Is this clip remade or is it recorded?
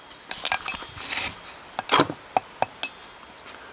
recorded